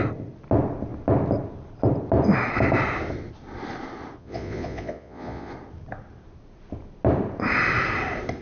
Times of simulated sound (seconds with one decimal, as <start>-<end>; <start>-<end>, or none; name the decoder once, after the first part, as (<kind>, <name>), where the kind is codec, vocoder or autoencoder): 4.2-5.5 (vocoder, Vocos)